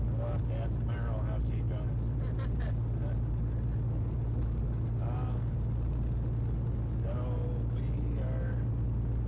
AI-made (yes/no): no